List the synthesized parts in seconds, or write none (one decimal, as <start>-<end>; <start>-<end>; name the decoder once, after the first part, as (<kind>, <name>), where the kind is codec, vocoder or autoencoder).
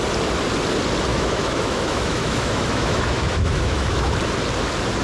1.1-4.1 (autoencoder, DAC-VAE)